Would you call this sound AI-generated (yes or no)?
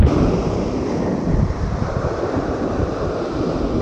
no